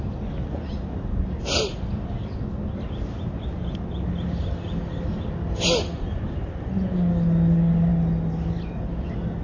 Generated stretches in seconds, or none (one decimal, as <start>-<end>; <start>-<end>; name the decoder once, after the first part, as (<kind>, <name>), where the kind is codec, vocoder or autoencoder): none